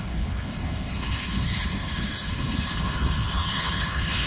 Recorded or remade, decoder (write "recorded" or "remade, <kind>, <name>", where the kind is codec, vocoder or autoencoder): remade, codec, HILCodec